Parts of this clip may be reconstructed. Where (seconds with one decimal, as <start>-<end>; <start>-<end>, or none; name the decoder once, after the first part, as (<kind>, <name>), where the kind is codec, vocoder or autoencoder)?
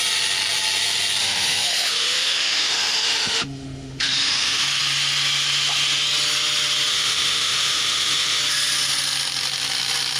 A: 1.2-4.8 (autoencoder, DAC-VAE); 6.9-8.4